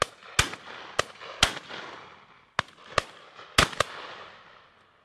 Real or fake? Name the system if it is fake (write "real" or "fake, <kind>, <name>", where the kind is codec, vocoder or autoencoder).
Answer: real